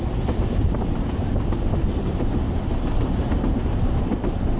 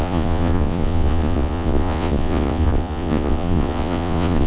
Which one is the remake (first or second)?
second